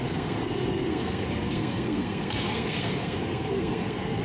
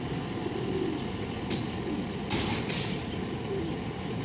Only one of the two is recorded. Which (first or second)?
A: second